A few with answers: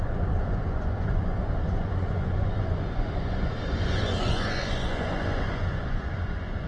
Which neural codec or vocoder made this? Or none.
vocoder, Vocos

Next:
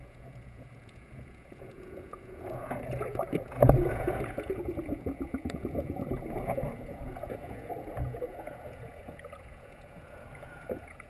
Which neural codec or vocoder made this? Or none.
vocoder, Vocos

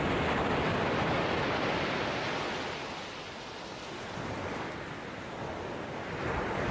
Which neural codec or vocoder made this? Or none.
none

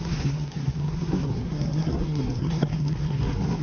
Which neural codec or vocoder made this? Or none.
codec, SNAC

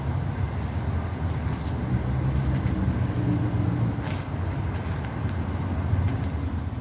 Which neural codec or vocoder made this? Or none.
none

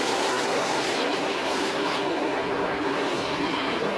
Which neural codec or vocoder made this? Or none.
codec, SNAC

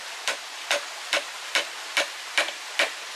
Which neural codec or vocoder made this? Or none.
none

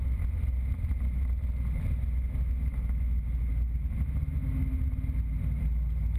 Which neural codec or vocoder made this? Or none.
none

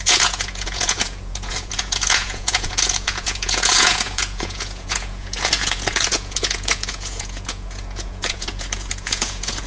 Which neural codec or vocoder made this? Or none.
vocoder, Vocos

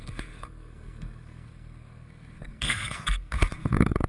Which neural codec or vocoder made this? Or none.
codec, SNAC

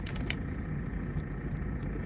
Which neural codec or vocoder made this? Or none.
none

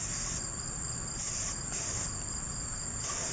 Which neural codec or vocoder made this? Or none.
vocoder, BigVGAN v2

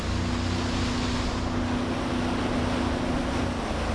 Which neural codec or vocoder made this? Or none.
none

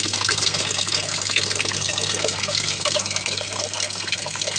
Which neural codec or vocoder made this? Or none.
codec, SNAC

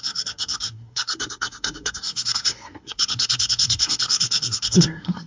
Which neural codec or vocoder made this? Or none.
codec, SNAC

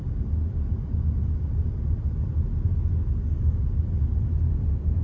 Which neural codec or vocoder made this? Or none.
none